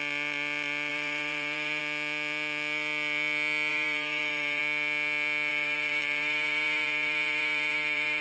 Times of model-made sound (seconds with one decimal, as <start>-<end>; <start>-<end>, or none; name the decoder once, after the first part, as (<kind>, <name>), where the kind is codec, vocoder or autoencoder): 0.9-1.8 (vocoder, BigVGAN v2); 3.7-4.6; 5.5-8.2